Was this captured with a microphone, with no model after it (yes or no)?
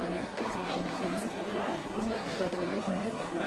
no